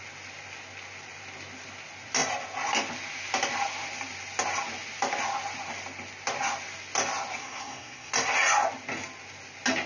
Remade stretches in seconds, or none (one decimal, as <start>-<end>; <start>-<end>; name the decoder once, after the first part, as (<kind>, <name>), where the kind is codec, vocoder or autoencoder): 7.4-8.1 (codec, SNAC)

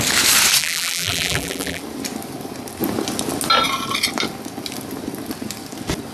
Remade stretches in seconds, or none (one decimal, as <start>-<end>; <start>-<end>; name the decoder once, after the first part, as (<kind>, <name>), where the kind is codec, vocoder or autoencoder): 0.6-1.8 (vocoder, BigVGAN v2)